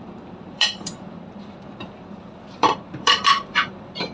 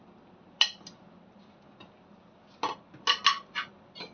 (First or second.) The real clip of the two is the second